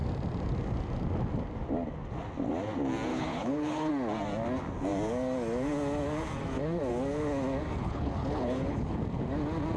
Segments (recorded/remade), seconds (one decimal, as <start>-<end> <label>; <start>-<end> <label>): 0.0-3.1 recorded; 3.1-3.9 remade; 3.9-7.8 recorded; 7.8-9.0 remade; 9.0-9.8 recorded